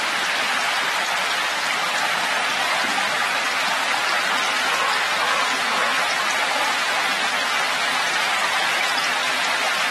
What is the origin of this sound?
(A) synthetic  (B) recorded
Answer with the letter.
B